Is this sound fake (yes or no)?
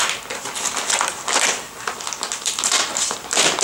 no